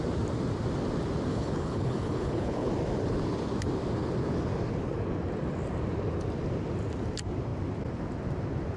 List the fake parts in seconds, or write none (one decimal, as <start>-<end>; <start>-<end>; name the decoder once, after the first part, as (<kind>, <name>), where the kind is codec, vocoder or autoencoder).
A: 1.3-2.7 (codec, HILCodec)